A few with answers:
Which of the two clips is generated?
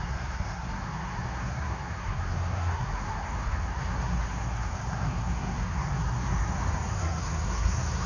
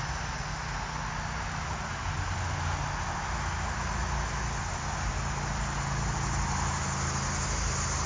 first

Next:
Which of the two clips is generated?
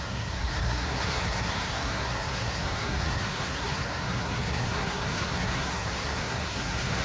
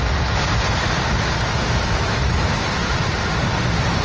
first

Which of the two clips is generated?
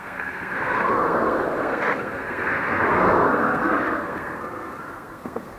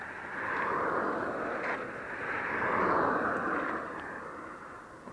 first